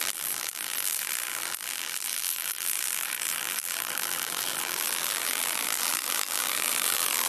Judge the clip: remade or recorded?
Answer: remade